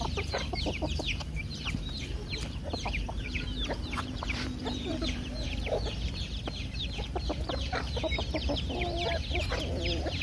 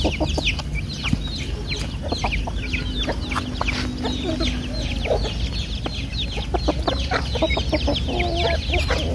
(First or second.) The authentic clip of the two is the second